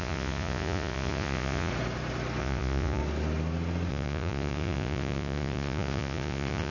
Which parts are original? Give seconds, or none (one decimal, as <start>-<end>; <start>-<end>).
1.7-2.4; 3.0-3.9